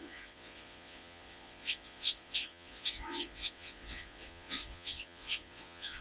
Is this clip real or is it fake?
fake